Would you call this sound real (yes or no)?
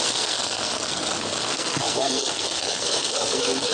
no